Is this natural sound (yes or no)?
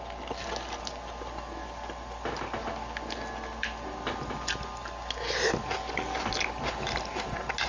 yes